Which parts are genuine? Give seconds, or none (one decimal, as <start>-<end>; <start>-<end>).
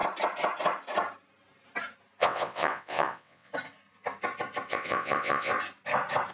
0.0-2.2; 3.5-4.7; 5.5-6.3